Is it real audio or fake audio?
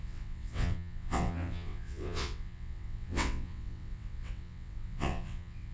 fake